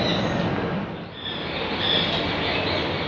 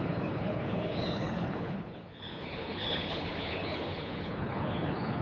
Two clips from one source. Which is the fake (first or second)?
second